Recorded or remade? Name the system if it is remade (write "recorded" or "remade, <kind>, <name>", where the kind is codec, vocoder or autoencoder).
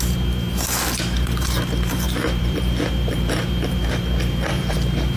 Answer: remade, vocoder, BigVGAN v2